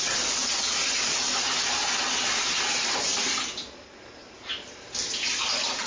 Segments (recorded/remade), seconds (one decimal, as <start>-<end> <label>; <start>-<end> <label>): 0.0-5.9 recorded